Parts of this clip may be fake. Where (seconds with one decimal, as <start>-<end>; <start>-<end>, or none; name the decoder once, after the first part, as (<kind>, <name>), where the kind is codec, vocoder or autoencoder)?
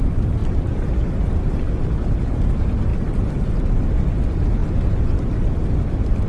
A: 0.4-2.1 (vocoder, BigVGAN v2); 2.9-3.5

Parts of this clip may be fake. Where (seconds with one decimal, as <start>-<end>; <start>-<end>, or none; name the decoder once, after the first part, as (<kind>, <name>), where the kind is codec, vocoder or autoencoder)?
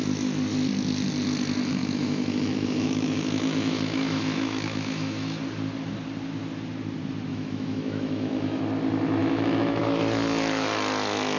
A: 1.8-5.4 (autoencoder, DAC-VAE); 7.3-8.6; 9.2-9.8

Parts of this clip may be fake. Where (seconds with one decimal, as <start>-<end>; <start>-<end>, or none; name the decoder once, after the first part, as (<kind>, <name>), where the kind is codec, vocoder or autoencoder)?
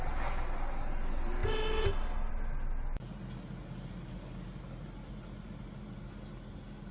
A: none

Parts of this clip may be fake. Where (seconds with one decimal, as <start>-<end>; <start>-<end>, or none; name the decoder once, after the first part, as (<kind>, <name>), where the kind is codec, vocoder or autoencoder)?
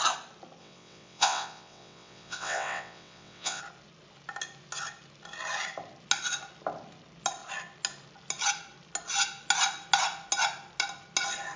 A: 0.6-3.6 (vocoder, WaveNeXt)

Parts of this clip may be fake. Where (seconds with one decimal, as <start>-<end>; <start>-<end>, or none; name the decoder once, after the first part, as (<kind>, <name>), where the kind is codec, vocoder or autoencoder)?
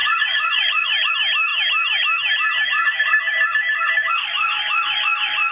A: 0.0-1.1 (vocoder, Vocos)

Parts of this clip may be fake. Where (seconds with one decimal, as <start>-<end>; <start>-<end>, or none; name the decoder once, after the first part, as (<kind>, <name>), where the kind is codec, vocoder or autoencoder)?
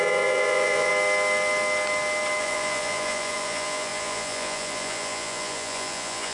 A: 0.0-0.9 (vocoder, Vocos); 2.4-6.3